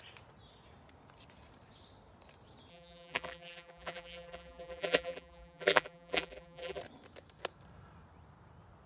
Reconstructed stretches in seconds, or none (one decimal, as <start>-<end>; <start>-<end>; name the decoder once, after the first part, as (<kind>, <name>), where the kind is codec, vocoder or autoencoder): 2.7-6.8 (vocoder, BigVGAN v2)

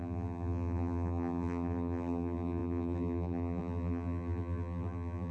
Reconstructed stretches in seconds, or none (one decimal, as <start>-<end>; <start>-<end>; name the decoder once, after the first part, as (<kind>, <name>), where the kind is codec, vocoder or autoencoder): 0.0-5.3 (vocoder, BigVGAN v2)

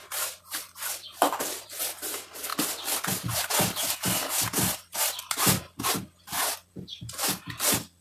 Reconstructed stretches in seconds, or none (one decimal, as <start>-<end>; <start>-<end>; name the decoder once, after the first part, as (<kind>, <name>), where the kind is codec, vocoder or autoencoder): 0.0-0.6 (vocoder, BigVGAN v2)

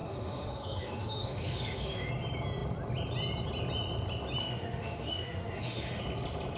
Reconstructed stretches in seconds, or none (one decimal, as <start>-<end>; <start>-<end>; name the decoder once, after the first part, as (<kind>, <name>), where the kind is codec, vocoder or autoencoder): 0.0-2.1 (autoencoder, DAC-VAE); 4.4-6.0